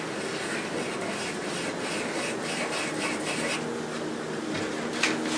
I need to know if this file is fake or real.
real